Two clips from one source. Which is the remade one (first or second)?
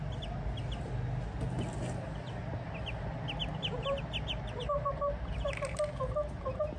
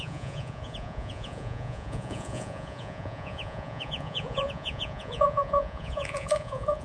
second